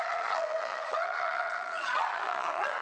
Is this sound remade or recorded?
remade